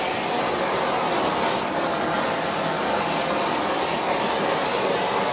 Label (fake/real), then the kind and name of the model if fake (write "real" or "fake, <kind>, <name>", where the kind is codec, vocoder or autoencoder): real